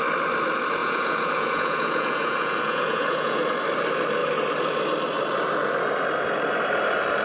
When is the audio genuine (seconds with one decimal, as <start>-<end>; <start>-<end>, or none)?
0.0-0.8; 3.4-7.2